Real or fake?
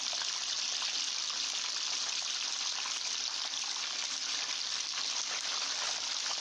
real